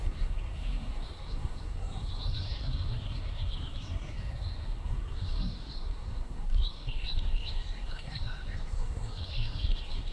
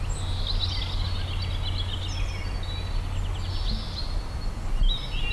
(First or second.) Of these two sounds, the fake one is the first